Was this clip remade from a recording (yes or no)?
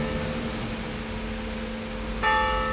no